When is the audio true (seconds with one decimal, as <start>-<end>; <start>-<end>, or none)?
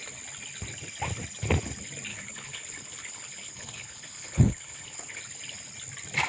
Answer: 0.0-2.1; 5.2-6.3